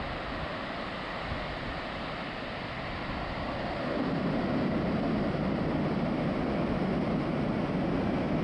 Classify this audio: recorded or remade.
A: recorded